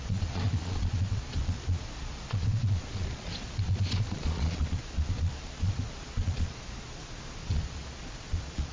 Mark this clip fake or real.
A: fake